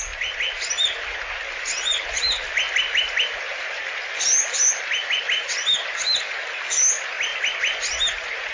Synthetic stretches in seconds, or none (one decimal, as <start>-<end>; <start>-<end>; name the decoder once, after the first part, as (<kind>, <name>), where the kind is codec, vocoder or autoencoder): none